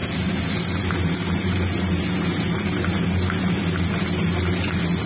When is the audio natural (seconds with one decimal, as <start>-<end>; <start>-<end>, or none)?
0.0-5.1